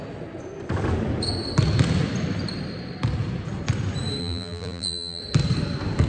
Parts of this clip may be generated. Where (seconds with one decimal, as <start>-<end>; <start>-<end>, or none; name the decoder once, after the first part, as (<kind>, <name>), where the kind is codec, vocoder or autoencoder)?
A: 4.2-5.2 (vocoder, BigVGAN v2)